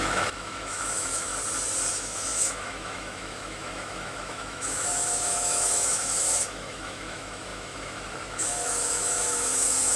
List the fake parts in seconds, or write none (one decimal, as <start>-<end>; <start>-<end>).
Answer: 0.0-1.3; 1.9-10.0